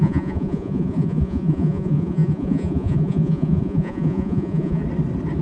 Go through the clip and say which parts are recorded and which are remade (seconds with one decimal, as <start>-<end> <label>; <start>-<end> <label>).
0.0-4.8 remade; 4.8-5.4 recorded

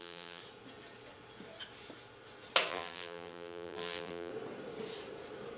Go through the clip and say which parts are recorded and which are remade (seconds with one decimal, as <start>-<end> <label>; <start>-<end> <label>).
0.0-0.4 remade; 0.4-2.7 recorded; 2.7-4.3 remade; 4.3-5.6 recorded

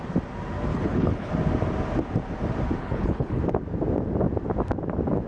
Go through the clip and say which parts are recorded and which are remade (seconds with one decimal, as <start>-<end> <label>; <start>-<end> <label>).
0.0-0.7 recorded; 0.7-1.3 remade; 1.3-2.8 recorded; 2.8-3.4 remade; 3.4-5.3 recorded

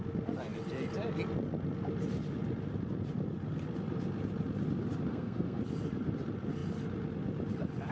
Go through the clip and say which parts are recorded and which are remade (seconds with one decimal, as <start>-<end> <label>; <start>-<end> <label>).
0.0-5.1 recorded; 5.1-5.6 remade; 5.6-7.9 recorded

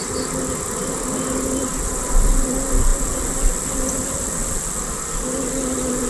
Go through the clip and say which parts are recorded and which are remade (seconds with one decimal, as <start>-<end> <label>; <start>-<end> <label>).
0.0-6.1 recorded

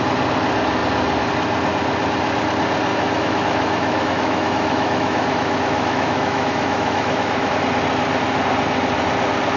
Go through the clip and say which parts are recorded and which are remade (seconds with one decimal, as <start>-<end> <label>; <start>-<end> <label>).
0.0-2.9 recorded; 2.9-7.5 remade; 7.5-9.6 recorded